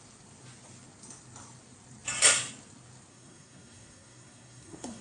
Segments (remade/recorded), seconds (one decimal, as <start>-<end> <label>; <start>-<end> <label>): 0.0-3.1 recorded; 3.1-5.0 remade